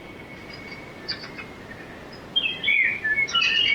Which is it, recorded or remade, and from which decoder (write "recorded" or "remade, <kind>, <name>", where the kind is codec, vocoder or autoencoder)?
recorded